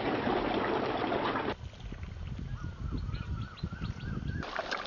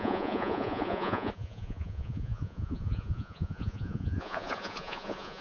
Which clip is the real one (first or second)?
first